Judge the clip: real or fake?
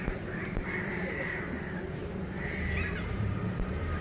fake